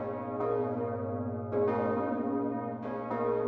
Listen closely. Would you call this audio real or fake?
real